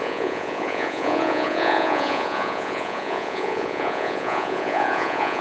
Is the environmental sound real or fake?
fake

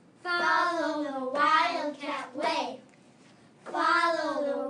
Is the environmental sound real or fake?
real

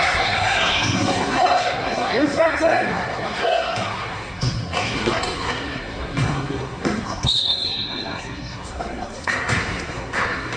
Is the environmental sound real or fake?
fake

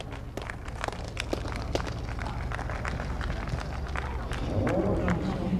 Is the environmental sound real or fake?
real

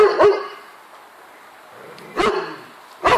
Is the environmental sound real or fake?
real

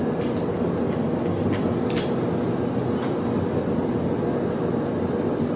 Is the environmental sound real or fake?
real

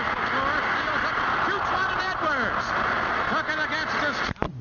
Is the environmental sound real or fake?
real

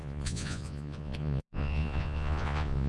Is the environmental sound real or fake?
fake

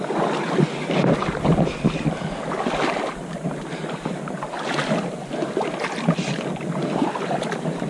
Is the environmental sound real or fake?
real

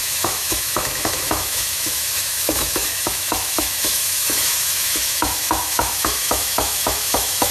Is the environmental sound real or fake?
fake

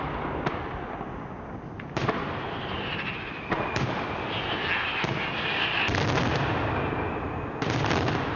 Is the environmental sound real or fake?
real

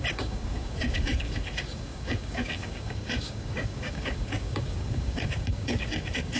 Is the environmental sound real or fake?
fake